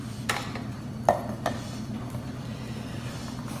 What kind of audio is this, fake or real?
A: fake